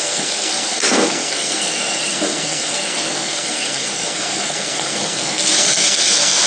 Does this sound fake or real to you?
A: fake